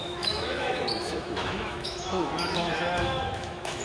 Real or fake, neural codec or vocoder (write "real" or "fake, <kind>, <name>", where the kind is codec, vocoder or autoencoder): fake, autoencoder, DAC-VAE